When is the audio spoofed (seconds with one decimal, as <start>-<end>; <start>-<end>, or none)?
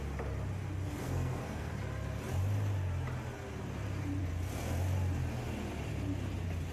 1.0-1.7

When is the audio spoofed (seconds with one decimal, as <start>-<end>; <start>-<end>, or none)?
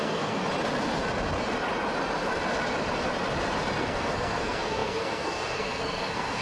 0.0-0.4; 3.8-6.4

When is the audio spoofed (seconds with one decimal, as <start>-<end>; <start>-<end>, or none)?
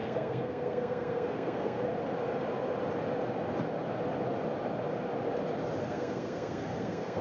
0.0-1.9; 5.8-7.2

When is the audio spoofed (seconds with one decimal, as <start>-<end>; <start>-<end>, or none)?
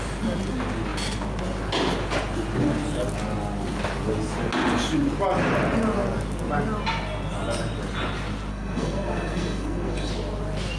8.5-10.1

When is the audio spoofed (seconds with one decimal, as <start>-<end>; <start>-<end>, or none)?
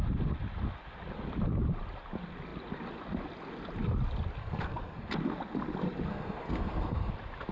4.4-5.1; 6.1-7.1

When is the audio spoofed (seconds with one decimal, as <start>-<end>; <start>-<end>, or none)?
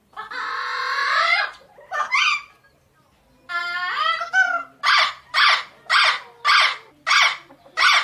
none